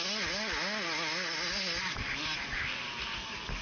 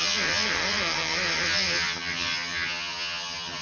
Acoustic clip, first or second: first